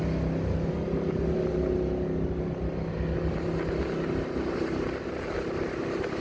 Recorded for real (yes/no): yes